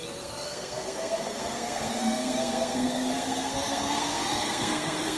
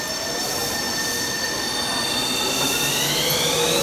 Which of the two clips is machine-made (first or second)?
first